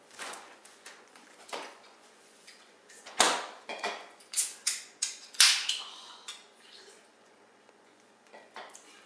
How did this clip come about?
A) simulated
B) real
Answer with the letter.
A